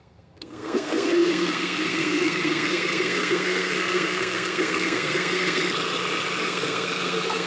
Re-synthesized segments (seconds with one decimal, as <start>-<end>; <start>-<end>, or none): 0.0-5.6; 6.4-7.5